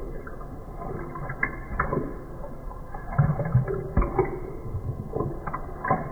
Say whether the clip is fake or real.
real